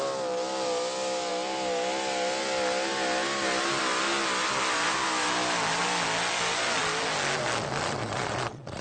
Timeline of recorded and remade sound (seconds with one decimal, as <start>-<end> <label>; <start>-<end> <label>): 0.0-8.0 recorded; 8.0-8.8 remade